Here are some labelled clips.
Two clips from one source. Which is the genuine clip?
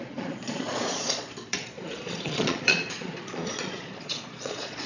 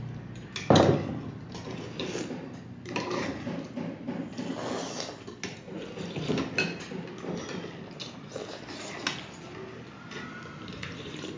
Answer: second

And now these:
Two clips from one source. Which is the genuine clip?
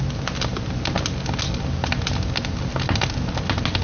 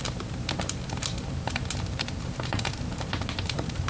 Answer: first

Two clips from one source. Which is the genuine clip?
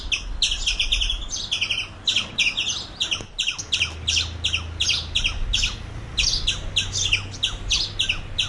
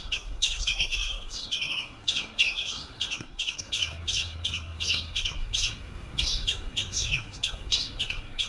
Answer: first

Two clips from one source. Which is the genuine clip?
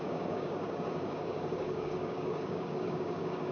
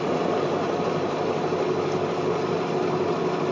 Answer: second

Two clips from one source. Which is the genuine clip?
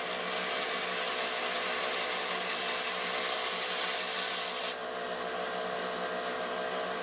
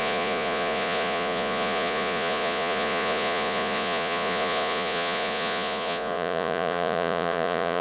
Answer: first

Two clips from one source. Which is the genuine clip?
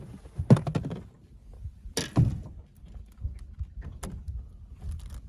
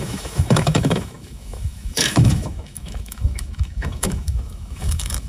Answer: first